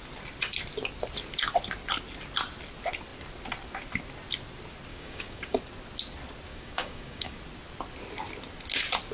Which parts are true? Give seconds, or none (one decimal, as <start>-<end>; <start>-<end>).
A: 0.0-4.9; 5.6-6.5; 7.4-9.1